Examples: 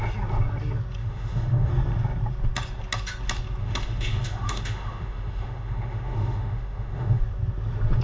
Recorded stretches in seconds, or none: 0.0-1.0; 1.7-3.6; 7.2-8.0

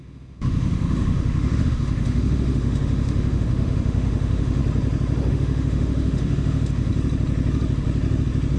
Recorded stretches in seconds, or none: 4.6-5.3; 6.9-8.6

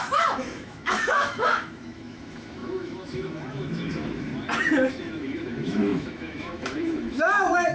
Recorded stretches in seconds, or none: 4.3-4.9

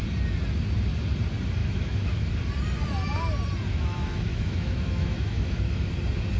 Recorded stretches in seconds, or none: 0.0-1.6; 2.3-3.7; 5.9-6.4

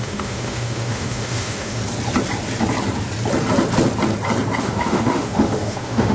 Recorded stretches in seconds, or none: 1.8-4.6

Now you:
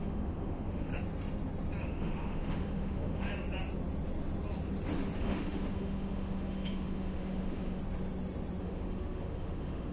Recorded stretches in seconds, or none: 0.9-1.8; 3.3-5.2; 7.8-8.6

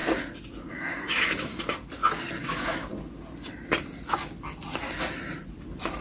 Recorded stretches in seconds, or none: 0.0-0.7; 1.5-2.4; 2.9-6.0